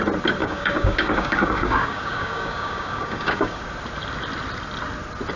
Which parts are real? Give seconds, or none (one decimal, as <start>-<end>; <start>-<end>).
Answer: 0.0-0.4; 3.6-5.4